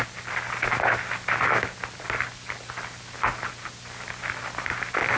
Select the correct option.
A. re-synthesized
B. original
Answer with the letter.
B